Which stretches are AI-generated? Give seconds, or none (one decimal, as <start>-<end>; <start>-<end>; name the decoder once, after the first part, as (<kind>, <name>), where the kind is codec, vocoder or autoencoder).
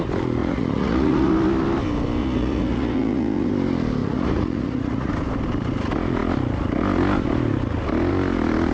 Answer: 0.4-1.3 (vocoder, Vocos); 2.2-3.5; 4.0-5.1